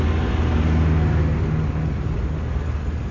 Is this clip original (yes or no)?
yes